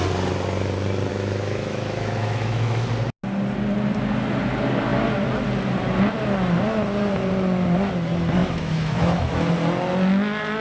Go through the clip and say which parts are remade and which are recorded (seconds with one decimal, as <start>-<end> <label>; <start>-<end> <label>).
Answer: 0.0-1.1 recorded; 1.1-2.9 remade; 2.9-8.4 recorded; 8.4-9.5 remade; 9.5-10.6 recorded